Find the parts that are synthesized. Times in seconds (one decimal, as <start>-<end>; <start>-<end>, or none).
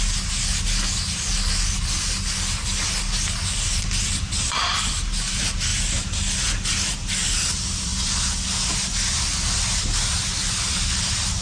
none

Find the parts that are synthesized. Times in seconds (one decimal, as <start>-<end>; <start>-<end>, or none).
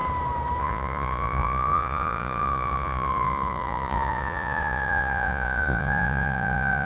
0.6-6.9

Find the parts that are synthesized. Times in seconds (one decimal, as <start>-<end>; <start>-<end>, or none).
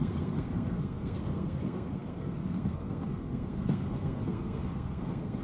0.0-5.4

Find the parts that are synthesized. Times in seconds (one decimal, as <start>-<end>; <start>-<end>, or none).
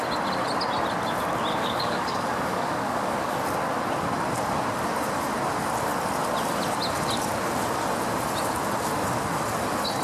1.5-3.4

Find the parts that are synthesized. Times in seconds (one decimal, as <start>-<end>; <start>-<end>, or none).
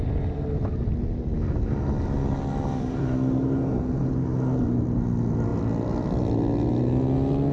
none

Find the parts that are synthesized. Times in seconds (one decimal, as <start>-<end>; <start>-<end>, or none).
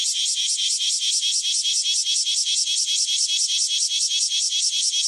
none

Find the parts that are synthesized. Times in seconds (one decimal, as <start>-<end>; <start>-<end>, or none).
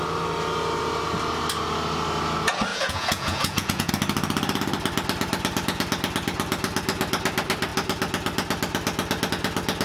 2.7-3.9